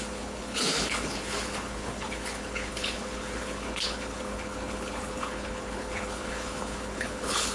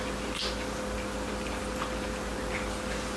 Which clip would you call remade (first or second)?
first